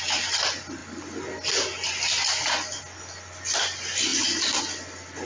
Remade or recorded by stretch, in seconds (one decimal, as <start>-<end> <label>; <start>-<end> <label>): 0.0-4.1 recorded; 4.1-4.6 remade; 4.6-5.3 recorded